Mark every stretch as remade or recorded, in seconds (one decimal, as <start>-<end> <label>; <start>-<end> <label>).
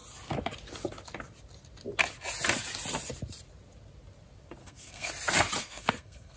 0.0-4.6 recorded; 4.6-5.1 remade; 5.1-5.6 recorded; 5.6-6.4 remade